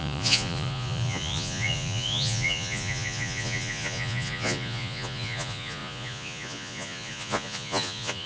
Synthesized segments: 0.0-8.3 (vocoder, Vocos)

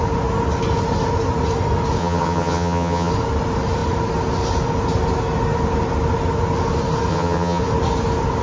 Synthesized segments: 2.0-3.1 (vocoder, HiFi-GAN); 7.1-7.6

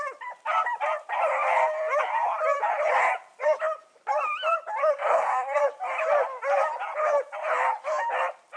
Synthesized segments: 4.8-5.6 (codec, SNAC)

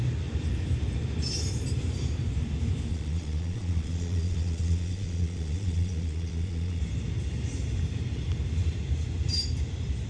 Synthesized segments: 2.9-6.8 (vocoder, Vocos)